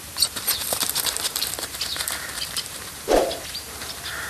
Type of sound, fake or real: fake